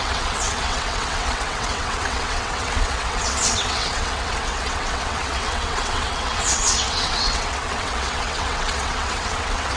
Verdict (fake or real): fake